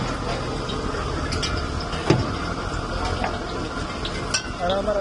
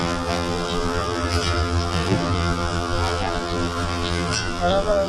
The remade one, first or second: second